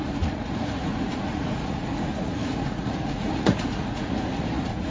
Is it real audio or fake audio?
fake